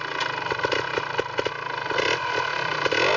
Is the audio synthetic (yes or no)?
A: no